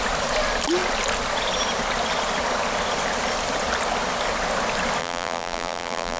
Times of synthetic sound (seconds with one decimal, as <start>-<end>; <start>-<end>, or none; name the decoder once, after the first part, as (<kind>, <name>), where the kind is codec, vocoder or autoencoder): 5.0-6.2 (vocoder, BigVGAN v2)